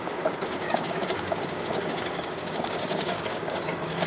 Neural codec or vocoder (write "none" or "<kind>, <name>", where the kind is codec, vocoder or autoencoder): codec, DAC